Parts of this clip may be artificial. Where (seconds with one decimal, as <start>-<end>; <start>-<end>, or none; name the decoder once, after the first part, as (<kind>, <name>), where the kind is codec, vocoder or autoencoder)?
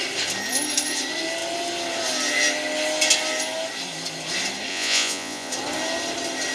4.7-5.5 (vocoder, Vocos)